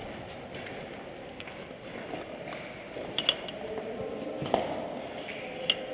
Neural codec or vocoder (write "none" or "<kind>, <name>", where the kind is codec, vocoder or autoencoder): none